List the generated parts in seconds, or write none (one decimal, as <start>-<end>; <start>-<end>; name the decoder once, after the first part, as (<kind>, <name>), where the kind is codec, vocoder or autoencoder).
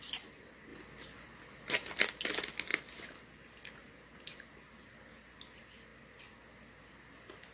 2.7-4.8 (vocoder, BigVGAN v2)